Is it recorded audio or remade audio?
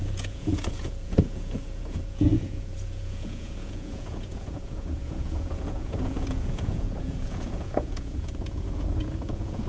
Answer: remade